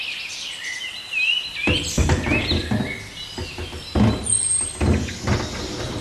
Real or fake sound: real